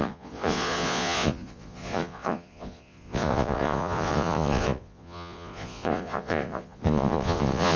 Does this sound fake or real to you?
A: fake